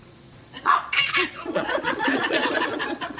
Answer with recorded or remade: remade